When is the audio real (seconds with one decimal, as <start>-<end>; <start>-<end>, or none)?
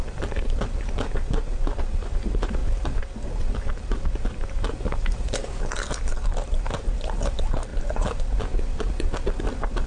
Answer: 7.7-8.9